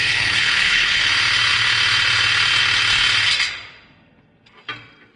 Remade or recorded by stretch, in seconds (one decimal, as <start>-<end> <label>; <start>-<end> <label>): 0.0-1.0 remade; 1.0-5.2 recorded